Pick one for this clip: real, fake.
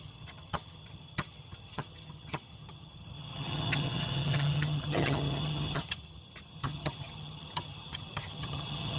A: fake